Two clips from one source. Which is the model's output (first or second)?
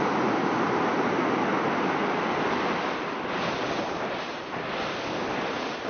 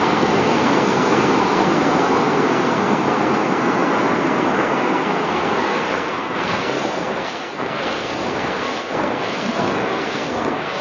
second